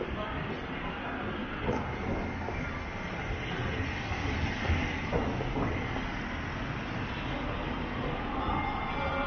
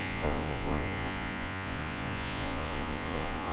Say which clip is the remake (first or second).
second